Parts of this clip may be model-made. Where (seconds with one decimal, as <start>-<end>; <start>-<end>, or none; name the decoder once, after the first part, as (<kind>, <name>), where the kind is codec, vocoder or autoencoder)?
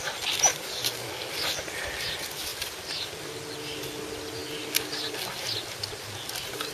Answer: 0.5-1.3 (codec, DAC)